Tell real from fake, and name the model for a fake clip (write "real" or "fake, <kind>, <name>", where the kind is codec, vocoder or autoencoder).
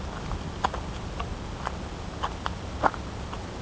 real